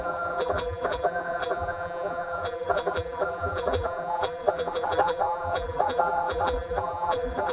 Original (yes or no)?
no